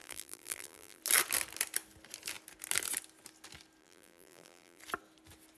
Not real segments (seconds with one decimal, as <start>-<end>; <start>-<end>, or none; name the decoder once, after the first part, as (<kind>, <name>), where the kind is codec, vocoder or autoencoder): 0.0-1.0 (vocoder, BigVGAN v2); 3.8-4.8